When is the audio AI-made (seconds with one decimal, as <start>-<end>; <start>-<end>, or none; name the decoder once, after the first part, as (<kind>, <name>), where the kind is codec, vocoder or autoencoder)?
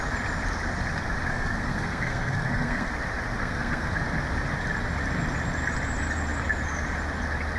1.3-2.9 (codec, SNAC); 3.4-3.9